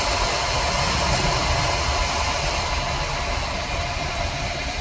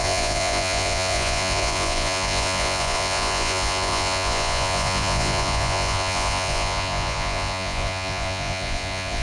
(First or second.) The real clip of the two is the first